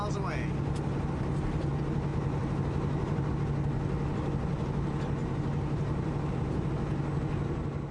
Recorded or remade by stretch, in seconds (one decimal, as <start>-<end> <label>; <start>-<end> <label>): 0.0-2.1 recorded; 2.1-3.3 remade; 3.3-5.2 recorded; 5.2-6.7 remade; 6.7-7.9 recorded